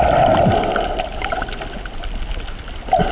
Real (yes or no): no